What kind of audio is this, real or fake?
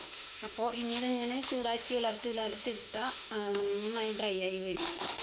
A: fake